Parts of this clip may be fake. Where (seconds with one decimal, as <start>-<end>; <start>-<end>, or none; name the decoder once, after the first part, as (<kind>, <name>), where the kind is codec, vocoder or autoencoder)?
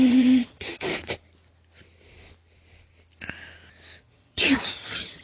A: 0.0-0.9 (vocoder, HiFi-GAN); 4.0-5.2